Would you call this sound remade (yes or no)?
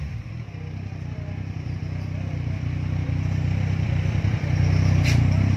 no